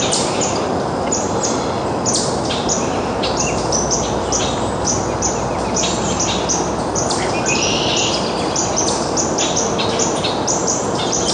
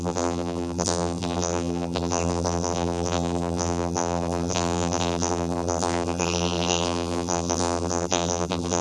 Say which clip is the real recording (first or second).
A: first